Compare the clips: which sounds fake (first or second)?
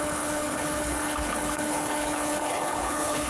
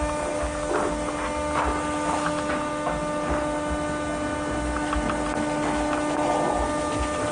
first